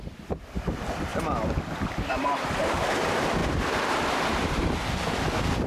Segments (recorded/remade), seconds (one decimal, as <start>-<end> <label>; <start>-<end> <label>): 0.0-1.1 remade; 1.1-1.7 recorded; 1.7-3.4 remade; 3.4-5.7 recorded